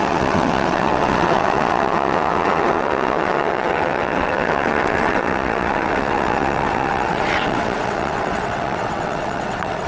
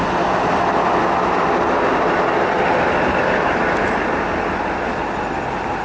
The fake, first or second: first